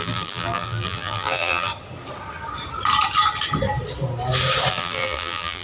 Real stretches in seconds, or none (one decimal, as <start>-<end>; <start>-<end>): 1.7-4.7